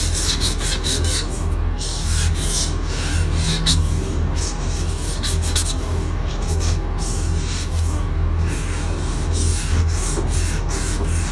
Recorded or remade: remade